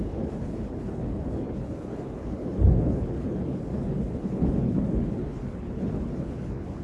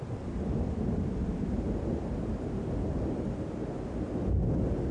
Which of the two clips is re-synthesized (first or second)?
first